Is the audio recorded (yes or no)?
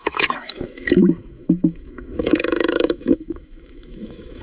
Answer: no